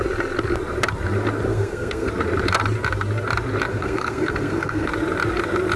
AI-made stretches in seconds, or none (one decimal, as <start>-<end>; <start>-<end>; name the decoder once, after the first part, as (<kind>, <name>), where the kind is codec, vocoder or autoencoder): 1.5-2.1 (codec, SNAC); 3.7-4.9